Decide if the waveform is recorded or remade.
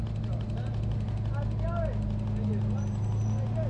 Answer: recorded